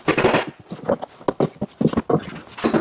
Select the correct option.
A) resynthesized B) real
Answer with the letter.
B